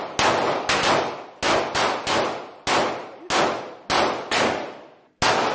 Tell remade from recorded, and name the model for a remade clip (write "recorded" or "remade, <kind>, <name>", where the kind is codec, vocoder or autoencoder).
recorded